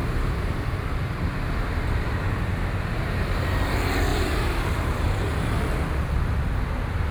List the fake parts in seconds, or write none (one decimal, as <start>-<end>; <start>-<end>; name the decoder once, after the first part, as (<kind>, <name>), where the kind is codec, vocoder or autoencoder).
0.0-0.8 (vocoder, BigVGAN v2); 4.1-5.6